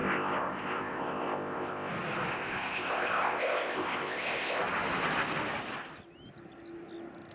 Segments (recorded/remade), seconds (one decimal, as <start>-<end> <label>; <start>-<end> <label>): 0.0-1.9 remade; 1.9-2.3 recorded; 2.3-4.6 remade; 4.6-7.3 recorded